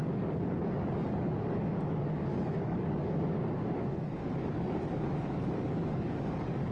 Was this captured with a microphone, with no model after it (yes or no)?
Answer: no